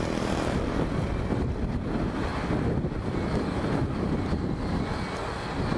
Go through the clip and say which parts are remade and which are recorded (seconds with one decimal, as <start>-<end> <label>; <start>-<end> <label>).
0.0-5.8 recorded